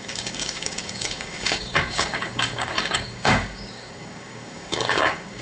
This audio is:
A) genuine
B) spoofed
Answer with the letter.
B